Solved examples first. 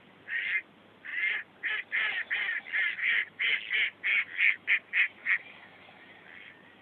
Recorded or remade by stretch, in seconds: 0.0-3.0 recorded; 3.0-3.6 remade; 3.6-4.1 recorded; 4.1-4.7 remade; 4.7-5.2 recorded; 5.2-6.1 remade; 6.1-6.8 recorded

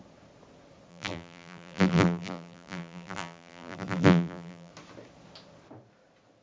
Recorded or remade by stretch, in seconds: 0.0-0.9 recorded; 0.9-4.7 remade; 4.7-6.4 recorded

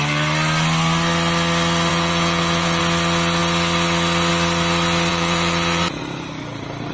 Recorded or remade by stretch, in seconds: 0.0-1.9 recorded; 1.9-2.8 remade; 2.8-5.1 recorded; 5.1-6.0 remade; 6.0-6.9 recorded

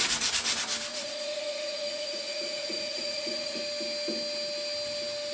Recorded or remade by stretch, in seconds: 0.0-0.9 recorded; 0.9-3.6 remade; 3.6-5.3 recorded